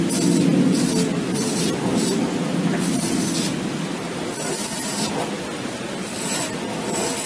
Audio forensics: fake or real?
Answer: real